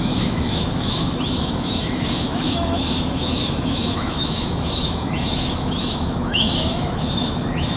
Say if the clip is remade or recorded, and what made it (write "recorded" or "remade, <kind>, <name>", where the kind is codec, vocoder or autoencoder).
remade, autoencoder, DAC-VAE